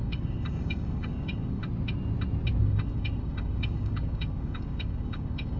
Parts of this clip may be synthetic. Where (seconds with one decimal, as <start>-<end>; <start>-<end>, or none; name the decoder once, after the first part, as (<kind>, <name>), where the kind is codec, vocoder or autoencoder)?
0.0-1.6 (codec, DAC); 2.6-5.6